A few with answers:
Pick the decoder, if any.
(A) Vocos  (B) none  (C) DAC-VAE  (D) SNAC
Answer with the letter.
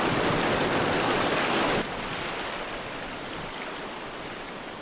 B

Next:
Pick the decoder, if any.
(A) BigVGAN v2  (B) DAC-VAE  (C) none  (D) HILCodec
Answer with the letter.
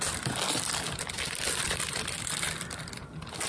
C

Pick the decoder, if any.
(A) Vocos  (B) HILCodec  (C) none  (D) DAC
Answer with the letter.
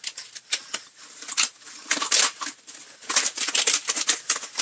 C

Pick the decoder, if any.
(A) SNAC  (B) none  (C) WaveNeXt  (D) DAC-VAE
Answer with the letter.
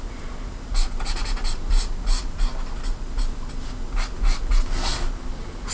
B